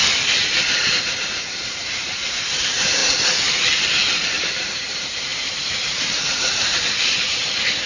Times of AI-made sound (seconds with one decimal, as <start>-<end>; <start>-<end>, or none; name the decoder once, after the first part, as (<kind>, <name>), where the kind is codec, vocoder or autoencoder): 0.7-3.0 (vocoder, BigVGAN v2); 4.5-7.9